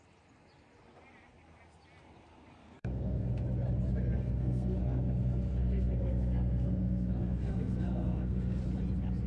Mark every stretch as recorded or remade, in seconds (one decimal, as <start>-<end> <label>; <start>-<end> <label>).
0.0-2.6 recorded; 2.6-3.3 remade; 3.3-4.1 recorded; 4.1-8.6 remade; 8.6-9.3 recorded

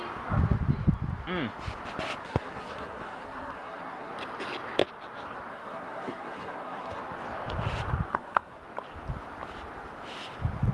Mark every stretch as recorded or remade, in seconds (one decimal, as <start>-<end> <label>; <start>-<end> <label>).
0.0-2.2 recorded; 2.2-4.1 remade; 4.1-5.5 recorded; 5.5-7.0 remade; 7.0-8.1 recorded; 8.1-8.6 remade; 8.6-10.7 recorded

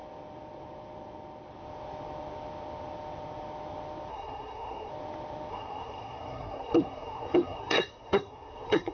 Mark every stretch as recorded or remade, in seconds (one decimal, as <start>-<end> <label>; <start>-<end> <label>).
0.0-4.1 recorded; 4.1-4.9 remade; 4.9-5.5 recorded; 5.5-8.9 remade

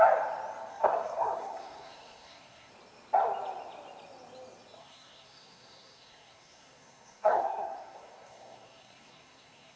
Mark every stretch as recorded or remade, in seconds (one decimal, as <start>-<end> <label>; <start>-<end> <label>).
0.0-0.7 recorded; 0.7-2.7 remade; 2.7-4.8 recorded; 4.8-9.8 remade

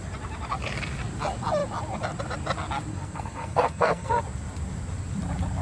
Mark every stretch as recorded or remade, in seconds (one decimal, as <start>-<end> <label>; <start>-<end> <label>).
0.0-2.9 recorded; 2.9-4.2 remade; 4.2-5.6 recorded